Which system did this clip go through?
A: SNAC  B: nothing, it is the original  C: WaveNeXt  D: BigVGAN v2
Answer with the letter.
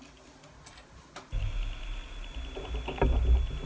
B